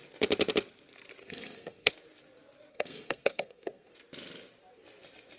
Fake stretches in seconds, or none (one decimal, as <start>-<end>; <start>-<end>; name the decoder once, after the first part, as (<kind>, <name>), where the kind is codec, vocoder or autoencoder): 1.2-1.9 (codec, SNAC); 2.7-3.9